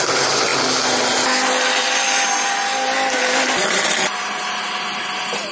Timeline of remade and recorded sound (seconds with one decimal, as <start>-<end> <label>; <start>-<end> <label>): 0.0-0.5 remade; 0.5-3.2 recorded; 3.2-5.5 remade